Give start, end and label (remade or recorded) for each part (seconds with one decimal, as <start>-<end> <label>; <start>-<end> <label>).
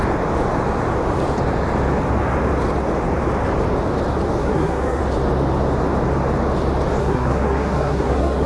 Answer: 0.0-4.4 recorded; 4.4-5.0 remade; 5.0-7.0 recorded; 7.0-8.5 remade